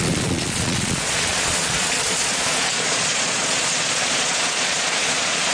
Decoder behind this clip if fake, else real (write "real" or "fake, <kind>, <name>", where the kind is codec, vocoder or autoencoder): fake, vocoder, Vocos